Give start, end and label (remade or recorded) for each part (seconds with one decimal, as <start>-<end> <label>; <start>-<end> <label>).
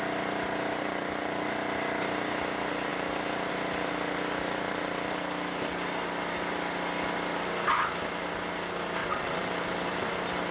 0.0-9.0 recorded; 9.0-9.5 remade; 9.5-10.5 recorded